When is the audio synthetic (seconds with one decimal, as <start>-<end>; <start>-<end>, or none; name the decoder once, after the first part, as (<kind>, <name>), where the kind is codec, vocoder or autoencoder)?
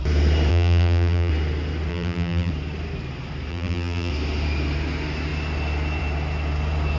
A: 0.5-1.3 (vocoder, BigVGAN v2); 1.9-2.5; 3.5-4.1